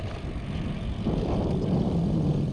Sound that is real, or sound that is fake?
real